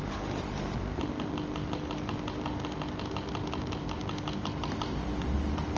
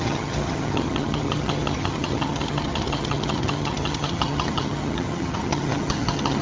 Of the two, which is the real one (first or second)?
first